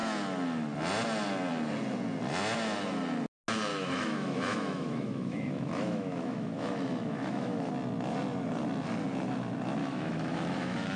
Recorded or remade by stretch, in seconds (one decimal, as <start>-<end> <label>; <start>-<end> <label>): 0.0-3.7 recorded; 3.7-7.7 remade; 7.7-9.8 recorded; 9.8-11.0 remade